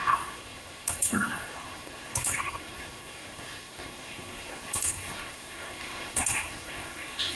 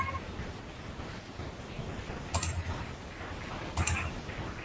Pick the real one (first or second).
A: second